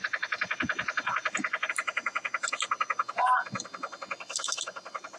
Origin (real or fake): real